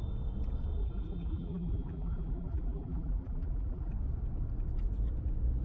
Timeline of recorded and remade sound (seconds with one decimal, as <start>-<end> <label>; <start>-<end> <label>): 0.0-0.8 recorded; 0.8-3.9 remade; 3.9-5.6 recorded